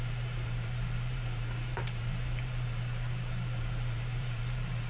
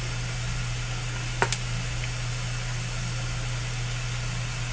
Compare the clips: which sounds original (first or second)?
second